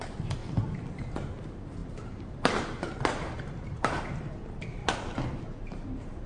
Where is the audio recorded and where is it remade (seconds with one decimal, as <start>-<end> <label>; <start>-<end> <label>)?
0.0-4.8 remade; 4.8-5.4 recorded; 5.4-6.3 remade